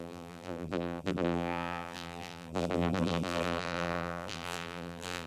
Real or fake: fake